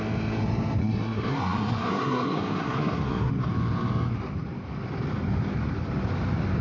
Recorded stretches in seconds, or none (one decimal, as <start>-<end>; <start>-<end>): 0.0-0.8; 3.3-6.6